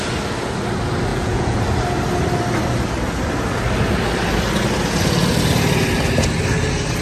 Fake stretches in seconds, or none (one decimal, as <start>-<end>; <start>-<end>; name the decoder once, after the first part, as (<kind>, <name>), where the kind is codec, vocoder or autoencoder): 1.1-1.6 (vocoder, Vocos)